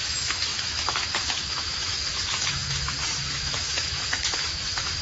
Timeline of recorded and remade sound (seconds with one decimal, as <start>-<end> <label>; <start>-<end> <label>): 0.0-5.0 remade